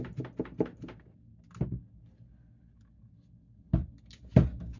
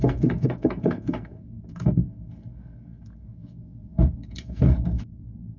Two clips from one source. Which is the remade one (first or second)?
second